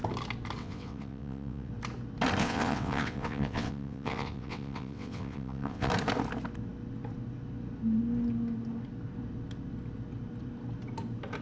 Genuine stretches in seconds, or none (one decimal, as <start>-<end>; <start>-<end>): 0.0-0.6; 1.7-2.4; 5.9-11.4